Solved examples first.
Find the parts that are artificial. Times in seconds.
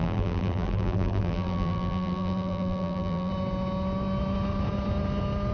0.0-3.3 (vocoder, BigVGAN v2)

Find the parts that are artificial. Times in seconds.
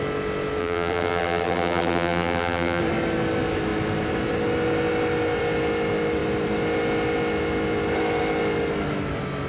0.6-2.8 (vocoder, BigVGAN v2)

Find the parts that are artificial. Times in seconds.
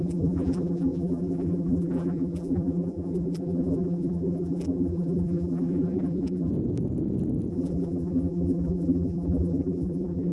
0.0-6.5 (vocoder, BigVGAN v2); 7.5-10.3